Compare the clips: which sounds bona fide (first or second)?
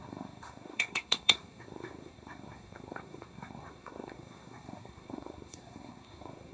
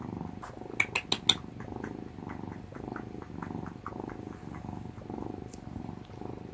second